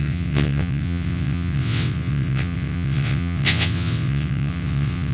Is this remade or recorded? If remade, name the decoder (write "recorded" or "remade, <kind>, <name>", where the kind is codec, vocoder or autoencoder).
remade, vocoder, WaveNeXt